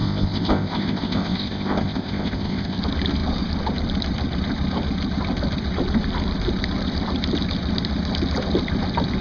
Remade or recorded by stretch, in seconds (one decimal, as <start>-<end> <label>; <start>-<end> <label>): 0.0-2.8 remade; 2.8-9.2 recorded